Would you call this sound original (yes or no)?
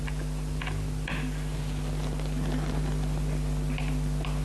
yes